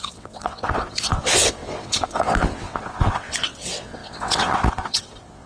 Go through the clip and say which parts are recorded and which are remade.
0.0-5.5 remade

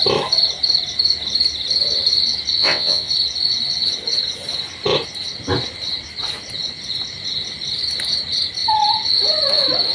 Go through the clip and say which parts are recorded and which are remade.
0.0-2.6 recorded; 2.6-3.1 remade; 3.1-9.9 recorded

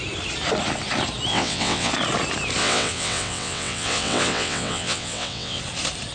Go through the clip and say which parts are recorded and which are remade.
0.0-1.3 recorded; 1.3-1.9 remade; 1.9-2.6 recorded; 2.6-5.6 remade; 5.6-6.1 recorded

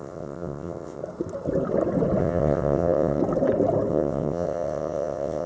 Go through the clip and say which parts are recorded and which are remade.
0.0-1.0 remade; 1.0-2.2 recorded; 2.2-3.2 remade; 3.2-3.9 recorded; 3.9-5.5 remade

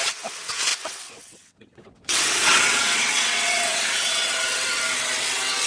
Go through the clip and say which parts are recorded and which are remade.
0.0-5.7 remade

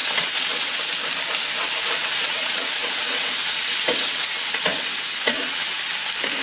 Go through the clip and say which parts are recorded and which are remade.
0.0-0.8 remade; 0.8-2.0 recorded; 2.0-5.8 remade; 5.8-6.4 recorded

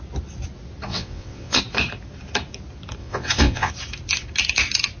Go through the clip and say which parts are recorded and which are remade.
0.0-0.9 recorded; 0.9-1.6 remade; 1.6-3.0 recorded; 3.0-3.7 remade; 3.7-5.0 recorded

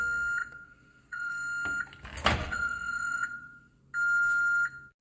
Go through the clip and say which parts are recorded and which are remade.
0.0-0.4 recorded; 0.4-1.3 remade; 1.3-2.4 recorded; 2.4-3.8 remade; 3.8-5.0 recorded